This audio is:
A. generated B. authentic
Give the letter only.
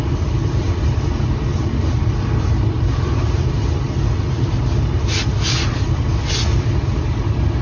B